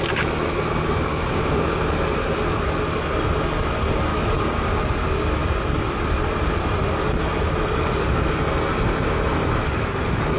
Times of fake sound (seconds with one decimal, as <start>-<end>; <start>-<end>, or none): 1.1-1.8; 4.1-4.8